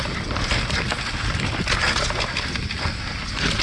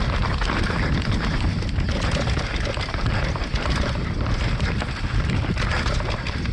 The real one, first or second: first